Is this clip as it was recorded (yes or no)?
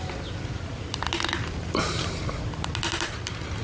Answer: yes